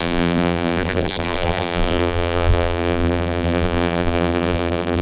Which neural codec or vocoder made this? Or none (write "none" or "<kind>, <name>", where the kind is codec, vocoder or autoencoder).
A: vocoder, BigVGAN v2